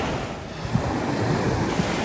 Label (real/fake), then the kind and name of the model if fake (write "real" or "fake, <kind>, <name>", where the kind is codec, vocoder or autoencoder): real